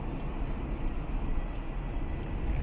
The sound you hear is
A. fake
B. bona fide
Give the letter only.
B